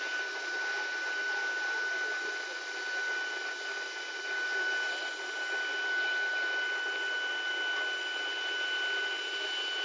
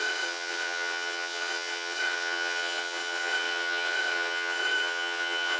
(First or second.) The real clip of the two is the first